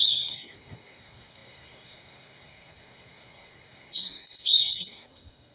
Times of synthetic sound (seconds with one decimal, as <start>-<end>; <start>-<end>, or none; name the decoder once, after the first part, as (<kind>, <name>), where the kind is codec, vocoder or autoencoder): 0.0-5.5 (codec, SNAC)